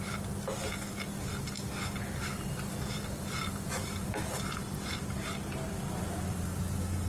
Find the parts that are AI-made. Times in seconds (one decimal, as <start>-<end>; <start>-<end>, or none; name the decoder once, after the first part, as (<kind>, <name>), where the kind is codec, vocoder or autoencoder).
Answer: 2.2-4.0 (vocoder, BigVGAN v2)